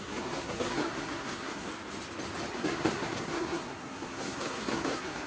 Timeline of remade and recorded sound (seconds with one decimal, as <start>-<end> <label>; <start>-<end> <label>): 0.0-1.7 remade; 1.7-2.5 recorded; 2.5-5.3 remade